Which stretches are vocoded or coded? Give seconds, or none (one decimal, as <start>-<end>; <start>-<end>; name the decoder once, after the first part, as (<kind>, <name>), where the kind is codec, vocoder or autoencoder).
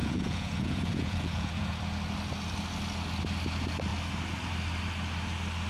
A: 0.0-1.8 (vocoder, Vocos)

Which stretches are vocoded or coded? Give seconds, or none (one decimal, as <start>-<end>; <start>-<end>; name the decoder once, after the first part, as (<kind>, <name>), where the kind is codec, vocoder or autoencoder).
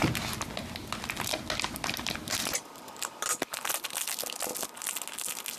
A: none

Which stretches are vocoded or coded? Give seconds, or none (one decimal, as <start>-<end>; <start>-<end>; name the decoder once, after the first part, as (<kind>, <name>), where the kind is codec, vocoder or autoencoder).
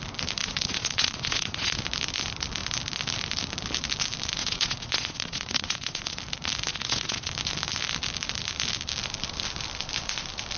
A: 0.4-1.8 (vocoder, Vocos); 4.4-6.2; 6.7-7.3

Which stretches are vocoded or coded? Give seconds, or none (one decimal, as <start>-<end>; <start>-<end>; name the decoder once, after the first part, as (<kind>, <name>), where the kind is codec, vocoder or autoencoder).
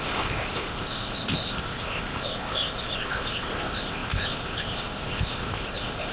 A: 0.0-6.1 (codec, ZipCodec)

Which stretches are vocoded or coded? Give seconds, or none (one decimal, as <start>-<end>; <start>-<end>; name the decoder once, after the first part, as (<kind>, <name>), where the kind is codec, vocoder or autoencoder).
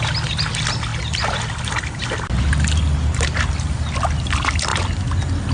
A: none